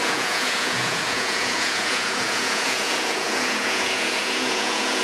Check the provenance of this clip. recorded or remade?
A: remade